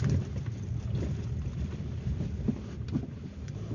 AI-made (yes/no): no